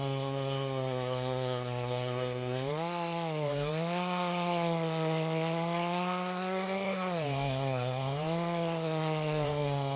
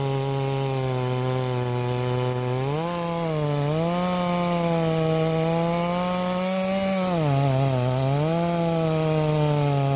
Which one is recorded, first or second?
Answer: second